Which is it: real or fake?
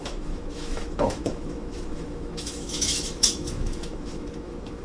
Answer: fake